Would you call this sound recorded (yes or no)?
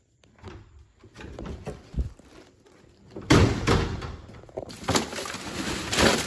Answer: no